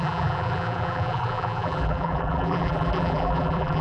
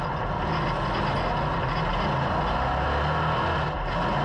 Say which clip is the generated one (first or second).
first